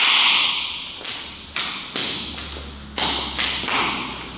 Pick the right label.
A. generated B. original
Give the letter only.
B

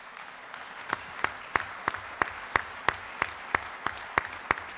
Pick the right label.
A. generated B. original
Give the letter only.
B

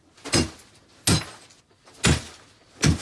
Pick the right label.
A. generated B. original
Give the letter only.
B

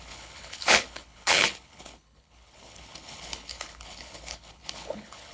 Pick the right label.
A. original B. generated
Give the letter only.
B